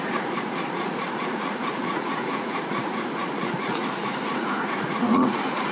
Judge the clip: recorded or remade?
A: remade